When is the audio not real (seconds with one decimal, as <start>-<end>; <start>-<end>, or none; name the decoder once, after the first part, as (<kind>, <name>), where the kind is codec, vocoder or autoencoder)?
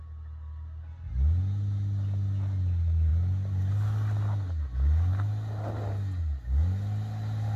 none